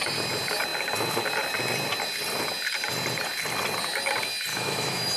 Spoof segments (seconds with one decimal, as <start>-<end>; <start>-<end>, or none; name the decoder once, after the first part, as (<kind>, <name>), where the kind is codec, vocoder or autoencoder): 4.5-5.2 (autoencoder, DAC-VAE)